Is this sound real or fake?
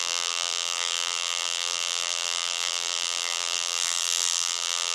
fake